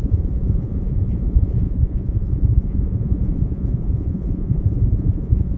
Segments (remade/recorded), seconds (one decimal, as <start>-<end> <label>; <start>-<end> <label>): 0.0-5.6 remade